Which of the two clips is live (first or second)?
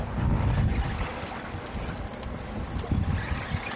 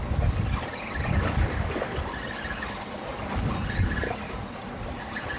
first